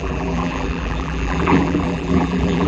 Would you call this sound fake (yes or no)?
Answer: yes